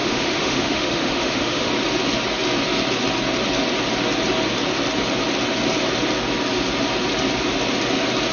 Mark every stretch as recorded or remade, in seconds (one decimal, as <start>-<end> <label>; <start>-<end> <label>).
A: 0.0-1.7 remade; 1.7-8.3 recorded